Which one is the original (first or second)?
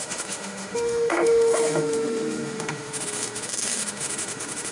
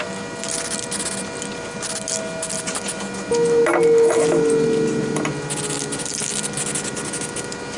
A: second